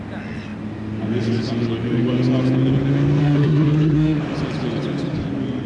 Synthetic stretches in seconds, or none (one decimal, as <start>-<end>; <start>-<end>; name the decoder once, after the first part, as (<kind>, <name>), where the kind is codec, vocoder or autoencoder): 3.2-4.2 (codec, SNAC)